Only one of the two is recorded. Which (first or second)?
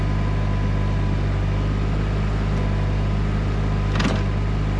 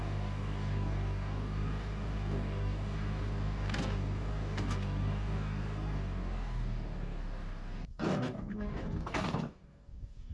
first